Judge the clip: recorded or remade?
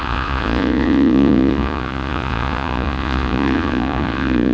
remade